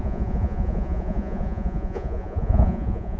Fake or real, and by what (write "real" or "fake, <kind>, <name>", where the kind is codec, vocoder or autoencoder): fake, vocoder, Vocos